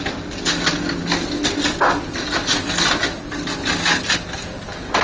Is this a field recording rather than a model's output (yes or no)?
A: yes